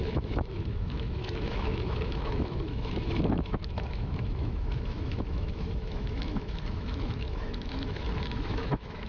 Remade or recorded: remade